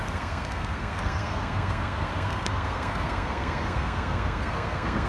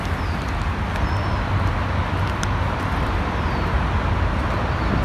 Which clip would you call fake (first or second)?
first